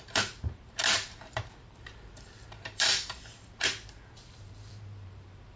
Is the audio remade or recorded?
remade